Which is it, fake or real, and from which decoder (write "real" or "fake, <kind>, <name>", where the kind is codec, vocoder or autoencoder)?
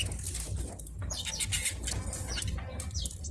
real